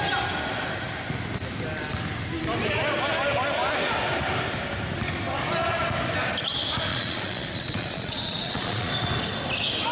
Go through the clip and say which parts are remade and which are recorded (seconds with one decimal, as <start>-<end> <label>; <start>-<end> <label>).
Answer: 0.0-6.9 recorded; 6.9-8.9 remade; 8.9-9.9 recorded